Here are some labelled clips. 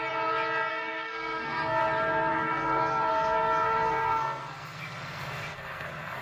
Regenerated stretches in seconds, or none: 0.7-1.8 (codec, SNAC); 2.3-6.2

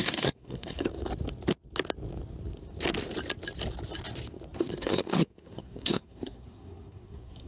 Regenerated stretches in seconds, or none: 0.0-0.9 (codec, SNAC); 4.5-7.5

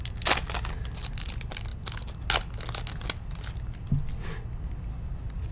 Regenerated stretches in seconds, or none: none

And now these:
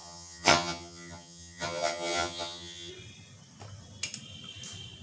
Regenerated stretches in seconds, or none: 0.0-2.9 (vocoder, HiFi-GAN)

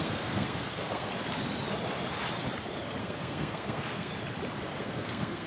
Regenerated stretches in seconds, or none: 0.0-1.1 (codec, SNAC); 3.0-4.1; 4.8-5.5